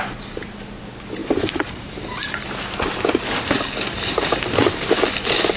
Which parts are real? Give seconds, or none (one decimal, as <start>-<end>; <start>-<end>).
0.0-1.2; 3.5-5.6